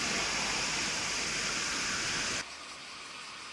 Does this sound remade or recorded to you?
recorded